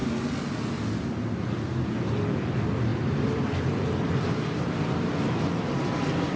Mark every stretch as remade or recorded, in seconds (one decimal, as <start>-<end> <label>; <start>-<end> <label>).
0.0-2.9 recorded; 2.9-4.1 remade; 4.1-6.4 recorded